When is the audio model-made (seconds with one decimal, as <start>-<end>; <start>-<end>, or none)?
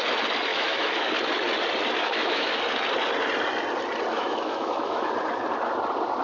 0.5-1.1; 2.0-2.6; 4.1-5.1